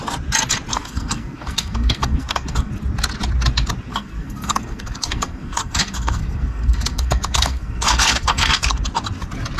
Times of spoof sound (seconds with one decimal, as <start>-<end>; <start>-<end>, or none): 0.7-2.7; 3.9-8.8